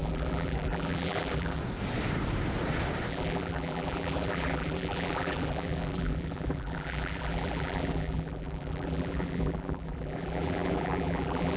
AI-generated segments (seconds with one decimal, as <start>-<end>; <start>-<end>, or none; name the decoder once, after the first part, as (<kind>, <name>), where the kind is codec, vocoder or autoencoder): 0.0-1.6 (vocoder, BigVGAN v2); 3.1-11.6